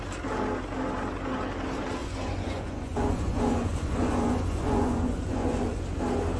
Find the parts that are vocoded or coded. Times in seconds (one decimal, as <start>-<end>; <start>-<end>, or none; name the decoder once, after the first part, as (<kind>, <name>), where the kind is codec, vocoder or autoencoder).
2.0-5.8 (vocoder, Vocos)